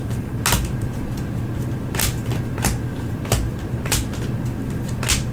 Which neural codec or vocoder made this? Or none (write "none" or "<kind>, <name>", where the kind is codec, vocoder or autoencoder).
none